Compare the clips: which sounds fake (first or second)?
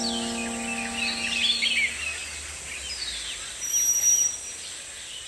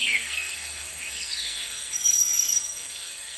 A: second